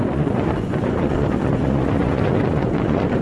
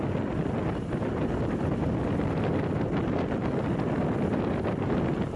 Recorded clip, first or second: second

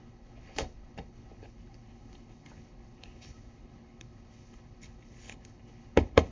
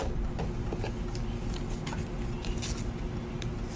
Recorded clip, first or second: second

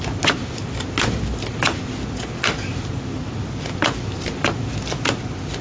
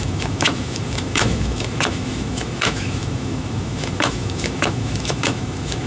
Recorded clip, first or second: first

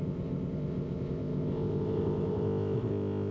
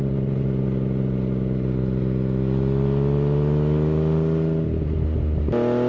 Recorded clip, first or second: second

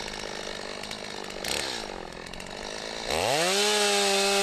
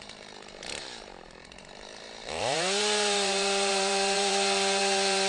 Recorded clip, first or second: first